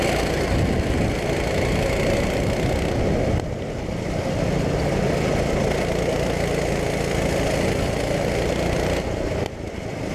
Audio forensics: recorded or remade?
recorded